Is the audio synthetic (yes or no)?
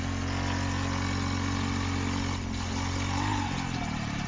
no